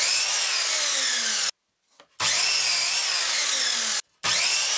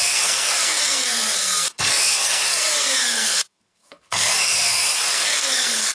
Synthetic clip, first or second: second